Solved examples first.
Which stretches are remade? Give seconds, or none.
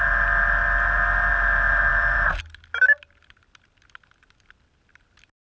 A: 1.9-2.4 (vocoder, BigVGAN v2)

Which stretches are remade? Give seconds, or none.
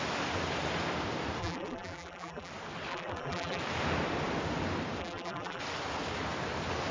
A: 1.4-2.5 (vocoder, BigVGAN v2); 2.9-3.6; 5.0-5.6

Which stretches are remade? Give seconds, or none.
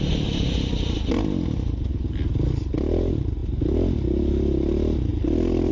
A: none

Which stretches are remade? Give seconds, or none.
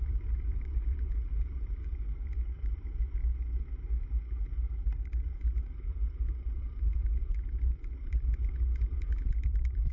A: 0.0-3.2 (vocoder, BigVGAN v2); 4.4-9.9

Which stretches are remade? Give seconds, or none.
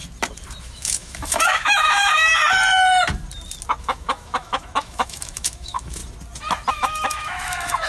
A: 0.6-2.3 (autoencoder, DAC-VAE); 3.8-6.0; 6.7-7.9